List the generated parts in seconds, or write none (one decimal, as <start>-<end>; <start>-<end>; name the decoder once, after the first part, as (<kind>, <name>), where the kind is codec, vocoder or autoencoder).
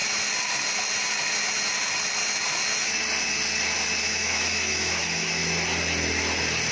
4.0-5.4 (autoencoder, DAC-VAE)